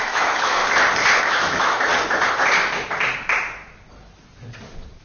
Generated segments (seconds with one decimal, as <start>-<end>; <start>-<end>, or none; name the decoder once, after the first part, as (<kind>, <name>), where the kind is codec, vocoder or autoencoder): 0.0-0.6 (autoencoder, DAC-VAE); 1.2-1.9